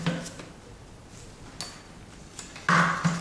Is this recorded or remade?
recorded